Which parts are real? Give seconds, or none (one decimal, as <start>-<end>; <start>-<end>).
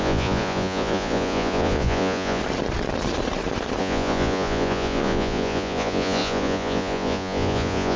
2.4-3.8